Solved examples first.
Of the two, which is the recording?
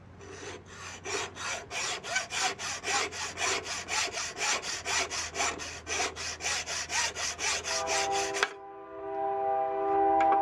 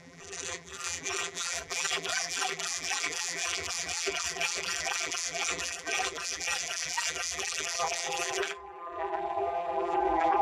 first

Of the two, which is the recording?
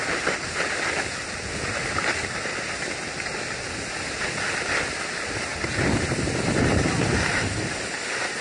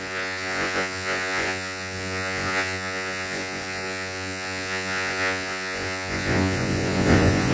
first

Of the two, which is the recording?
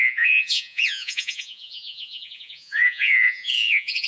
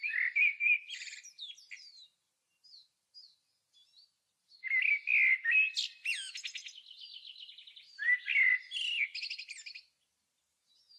second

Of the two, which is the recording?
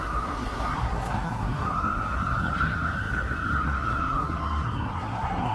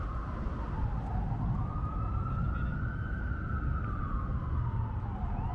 second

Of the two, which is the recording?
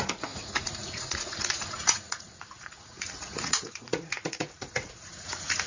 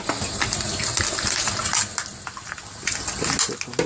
second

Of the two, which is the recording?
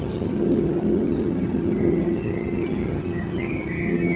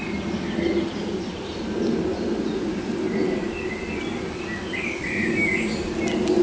second